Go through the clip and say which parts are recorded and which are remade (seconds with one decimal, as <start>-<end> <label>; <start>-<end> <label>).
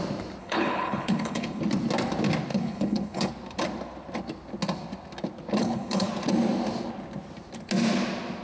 0.0-0.4 recorded; 0.4-1.6 remade; 1.6-2.5 recorded; 2.5-3.3 remade; 3.3-5.6 recorded; 5.6-6.1 remade; 6.1-8.4 recorded